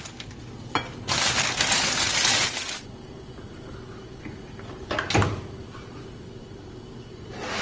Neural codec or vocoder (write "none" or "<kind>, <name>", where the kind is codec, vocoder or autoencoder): none